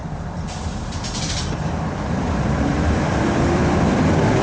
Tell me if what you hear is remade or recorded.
remade